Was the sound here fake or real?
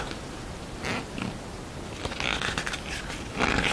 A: real